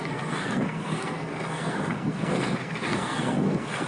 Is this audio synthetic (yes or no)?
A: yes